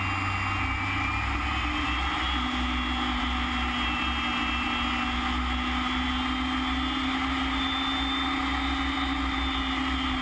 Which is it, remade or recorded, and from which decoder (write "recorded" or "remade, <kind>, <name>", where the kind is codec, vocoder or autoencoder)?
recorded